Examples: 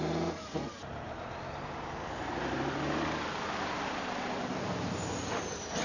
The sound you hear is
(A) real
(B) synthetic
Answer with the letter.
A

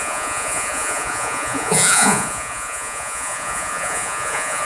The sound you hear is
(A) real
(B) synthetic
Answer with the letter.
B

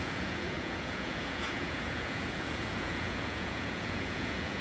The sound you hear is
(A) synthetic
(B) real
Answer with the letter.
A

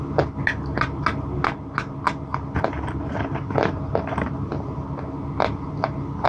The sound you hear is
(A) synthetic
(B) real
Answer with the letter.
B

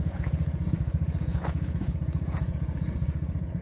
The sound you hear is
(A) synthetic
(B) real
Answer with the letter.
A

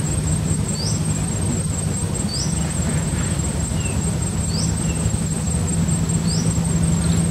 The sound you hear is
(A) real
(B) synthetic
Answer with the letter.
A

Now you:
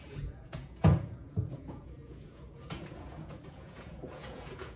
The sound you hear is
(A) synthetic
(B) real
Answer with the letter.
A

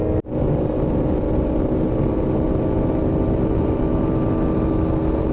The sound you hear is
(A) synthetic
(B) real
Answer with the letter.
B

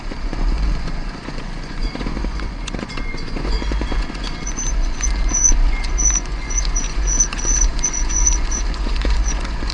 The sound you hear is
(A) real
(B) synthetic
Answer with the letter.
B